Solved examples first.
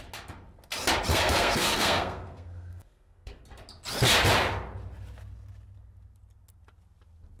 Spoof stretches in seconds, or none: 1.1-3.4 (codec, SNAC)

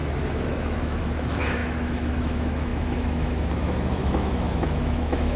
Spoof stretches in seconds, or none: 0.0-5.4 (autoencoder, DAC-VAE)

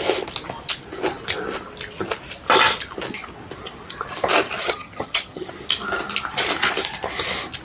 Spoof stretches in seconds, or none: 4.6-5.5 (vocoder, HiFi-GAN)

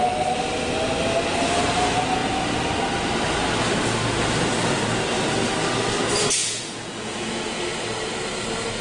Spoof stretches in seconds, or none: 6.4-7.6 (vocoder, Vocos)

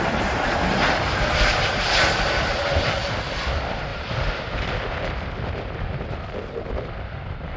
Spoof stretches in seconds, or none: 3.9-6.7 (vocoder, BigVGAN v2)